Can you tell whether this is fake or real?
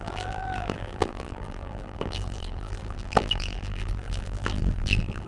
fake